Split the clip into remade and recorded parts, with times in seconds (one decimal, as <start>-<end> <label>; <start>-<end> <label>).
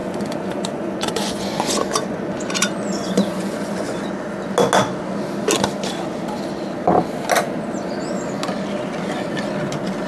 0.0-4.1 remade; 4.1-10.1 recorded